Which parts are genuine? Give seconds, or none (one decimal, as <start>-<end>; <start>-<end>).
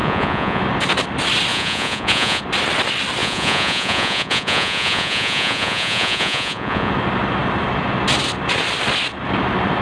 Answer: 0.6-1.5; 2.4-3.2; 6.9-9.8